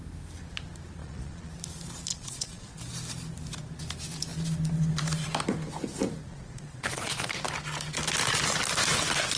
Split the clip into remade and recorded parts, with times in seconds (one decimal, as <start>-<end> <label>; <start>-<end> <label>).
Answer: 0.0-1.0 recorded; 1.0-1.5 remade; 1.5-2.1 recorded; 2.1-2.8 remade; 2.8-6.3 recorded; 6.3-7.3 remade; 7.3-9.4 recorded